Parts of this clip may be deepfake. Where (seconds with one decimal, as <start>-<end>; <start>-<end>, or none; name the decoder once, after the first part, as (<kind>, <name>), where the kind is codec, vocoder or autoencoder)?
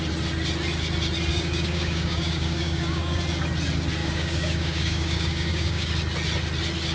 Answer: 1.3-3.2 (codec, DAC); 4.0-5.9